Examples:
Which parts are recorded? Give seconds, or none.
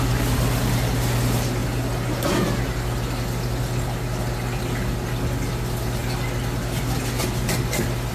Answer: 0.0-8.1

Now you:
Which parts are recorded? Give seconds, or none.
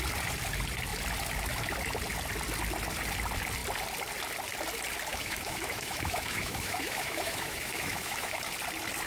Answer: 0.0-5.1; 8.4-9.1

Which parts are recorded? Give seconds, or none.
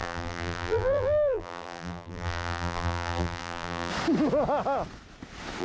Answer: 3.9-5.6